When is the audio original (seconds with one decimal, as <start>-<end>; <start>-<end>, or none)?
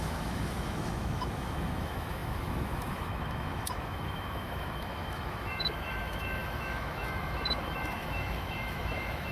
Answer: none